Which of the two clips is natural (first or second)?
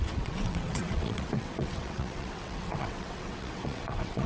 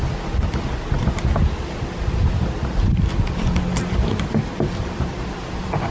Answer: second